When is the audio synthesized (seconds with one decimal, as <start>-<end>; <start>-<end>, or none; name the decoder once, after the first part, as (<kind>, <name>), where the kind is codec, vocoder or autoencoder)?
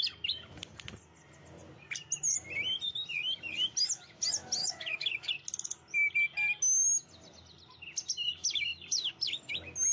4.6-5.3 (autoencoder, DAC-VAE)